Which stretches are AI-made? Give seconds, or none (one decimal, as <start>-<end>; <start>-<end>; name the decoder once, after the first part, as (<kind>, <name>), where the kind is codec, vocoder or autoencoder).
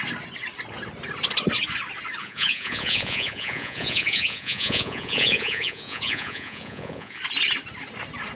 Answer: 2.2-7.2 (vocoder, Vocos)